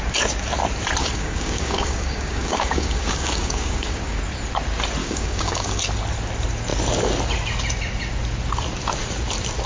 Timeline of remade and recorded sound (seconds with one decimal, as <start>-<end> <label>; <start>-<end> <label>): 0.0-1.0 recorded; 1.0-4.2 remade; 4.2-5.0 recorded; 5.0-5.8 remade; 5.8-9.7 recorded